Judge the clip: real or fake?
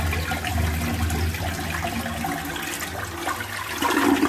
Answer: real